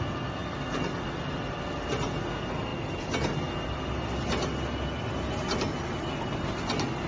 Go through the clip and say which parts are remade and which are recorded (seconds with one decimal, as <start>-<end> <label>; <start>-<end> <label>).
0.0-7.1 recorded